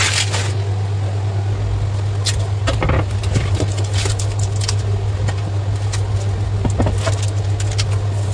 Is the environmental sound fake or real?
real